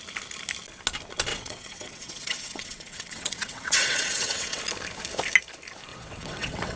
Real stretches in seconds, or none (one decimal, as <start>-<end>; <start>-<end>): 0.0-1.3; 4.6-5.9